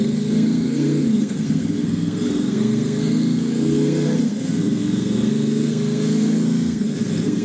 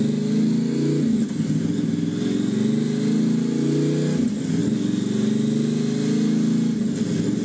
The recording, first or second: second